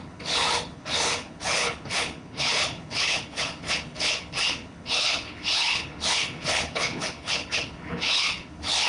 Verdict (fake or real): fake